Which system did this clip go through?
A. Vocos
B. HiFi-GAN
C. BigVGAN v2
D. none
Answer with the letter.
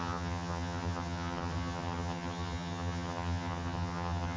B